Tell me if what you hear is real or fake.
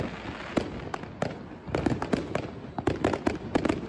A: real